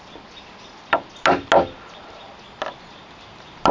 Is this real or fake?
real